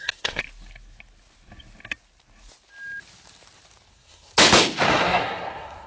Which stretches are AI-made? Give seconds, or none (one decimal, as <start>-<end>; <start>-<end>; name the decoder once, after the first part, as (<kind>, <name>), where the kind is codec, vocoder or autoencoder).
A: 0.0-0.4 (codec, SNAC); 3.9-4.3; 4.9-5.9